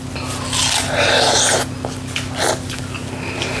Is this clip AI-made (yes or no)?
no